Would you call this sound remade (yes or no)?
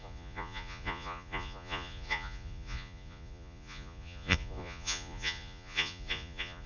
yes